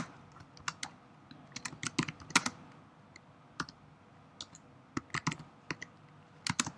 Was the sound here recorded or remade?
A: recorded